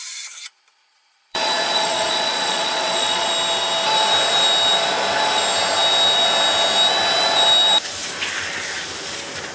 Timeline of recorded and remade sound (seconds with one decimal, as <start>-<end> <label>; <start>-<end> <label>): 0.0-0.9 recorded; 0.9-3.3 remade; 3.3-9.5 recorded